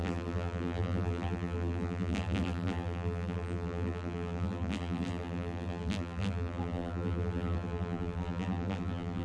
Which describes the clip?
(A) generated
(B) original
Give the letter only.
A